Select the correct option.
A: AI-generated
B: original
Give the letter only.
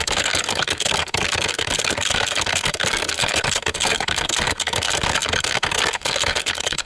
A